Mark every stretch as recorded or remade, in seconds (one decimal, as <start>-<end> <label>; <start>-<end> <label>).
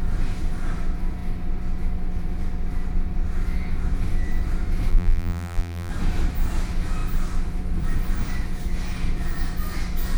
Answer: 0.0-4.9 recorded; 4.9-5.9 remade; 5.9-10.2 recorded